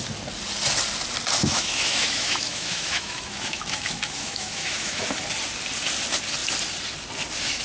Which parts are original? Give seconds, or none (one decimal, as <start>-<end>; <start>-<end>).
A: 0.0-1.4; 5.0-7.6